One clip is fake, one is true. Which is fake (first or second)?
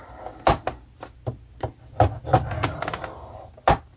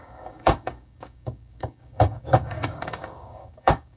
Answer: second